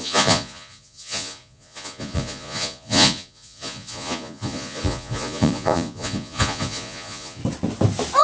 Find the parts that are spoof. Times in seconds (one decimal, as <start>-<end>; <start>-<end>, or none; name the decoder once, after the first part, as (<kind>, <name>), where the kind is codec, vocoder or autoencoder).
0.0-7.4 (vocoder, Vocos)